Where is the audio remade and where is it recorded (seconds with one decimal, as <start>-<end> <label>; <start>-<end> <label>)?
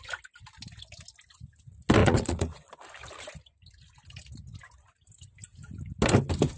0.0-2.0 recorded; 2.0-2.7 remade; 2.7-6.6 recorded